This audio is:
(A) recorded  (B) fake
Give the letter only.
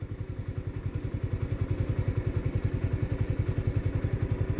A